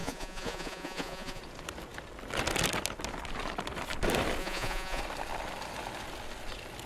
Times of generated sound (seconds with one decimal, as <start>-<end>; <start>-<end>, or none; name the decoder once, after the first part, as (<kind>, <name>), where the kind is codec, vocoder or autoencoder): 0.0-1.4 (vocoder, Vocos); 4.4-5.0